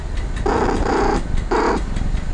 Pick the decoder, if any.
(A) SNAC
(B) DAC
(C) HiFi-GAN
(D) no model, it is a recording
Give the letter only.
D